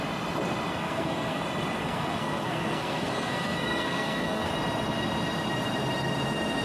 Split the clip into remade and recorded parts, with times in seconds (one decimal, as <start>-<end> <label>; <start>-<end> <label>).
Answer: 0.0-0.7 recorded; 0.7-1.4 remade; 1.4-1.8 recorded; 1.8-4.5 remade; 4.5-6.6 recorded